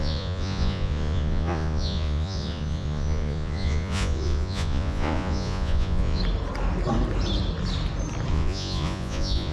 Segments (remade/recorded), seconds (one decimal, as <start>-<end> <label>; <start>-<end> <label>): 0.0-6.2 remade; 6.2-8.3 recorded; 8.3-9.5 remade